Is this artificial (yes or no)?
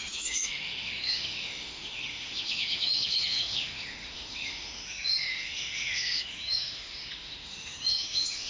yes